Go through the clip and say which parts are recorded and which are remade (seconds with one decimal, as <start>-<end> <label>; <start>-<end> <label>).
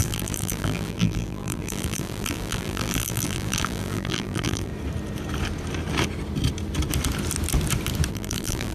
0.0-4.7 remade; 4.7-8.1 recorded; 8.1-8.7 remade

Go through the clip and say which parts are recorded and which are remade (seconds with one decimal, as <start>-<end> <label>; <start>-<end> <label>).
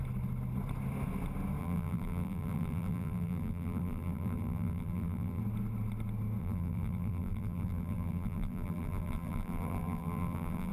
0.0-1.6 recorded; 1.6-5.4 remade; 5.4-6.4 recorded; 6.4-10.7 remade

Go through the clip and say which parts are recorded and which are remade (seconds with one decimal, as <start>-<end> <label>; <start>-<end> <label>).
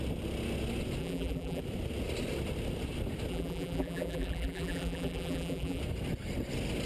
0.0-1.0 recorded; 1.0-1.6 remade; 1.6-3.3 recorded; 3.3-5.8 remade; 5.8-6.9 recorded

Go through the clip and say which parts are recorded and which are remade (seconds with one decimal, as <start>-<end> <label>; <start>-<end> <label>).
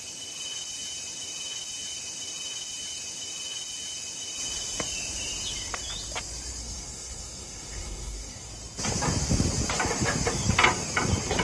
0.0-6.6 recorded; 6.6-8.5 remade; 8.5-11.4 recorded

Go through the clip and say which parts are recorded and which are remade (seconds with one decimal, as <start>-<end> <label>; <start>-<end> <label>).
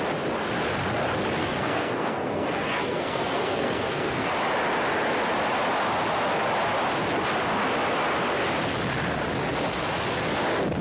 0.0-1.4 recorded; 1.4-4.3 remade; 4.3-10.8 recorded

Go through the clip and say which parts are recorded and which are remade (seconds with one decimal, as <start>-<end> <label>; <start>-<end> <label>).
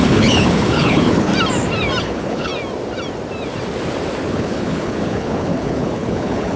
0.0-1.3 remade; 1.3-2.0 recorded; 2.0-2.5 remade; 2.5-4.3 recorded; 4.3-6.6 remade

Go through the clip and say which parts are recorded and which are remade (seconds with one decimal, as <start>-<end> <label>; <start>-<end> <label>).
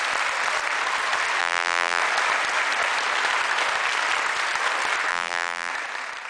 0.0-1.4 recorded; 1.4-2.0 remade; 2.0-5.1 recorded; 5.1-5.7 remade; 5.7-6.3 recorded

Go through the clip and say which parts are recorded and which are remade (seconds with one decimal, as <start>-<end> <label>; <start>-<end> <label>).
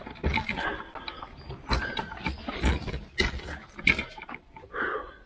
0.0-5.3 recorded